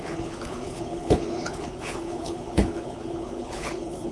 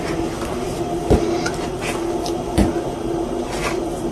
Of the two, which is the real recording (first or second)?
second